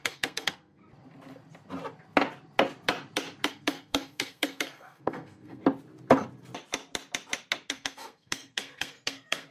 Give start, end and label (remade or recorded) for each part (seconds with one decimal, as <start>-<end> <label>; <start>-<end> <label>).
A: 0.0-0.8 remade; 0.8-3.5 recorded; 3.5-5.6 remade; 5.6-7.7 recorded; 7.7-9.5 remade